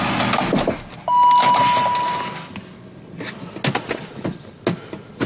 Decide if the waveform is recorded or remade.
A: recorded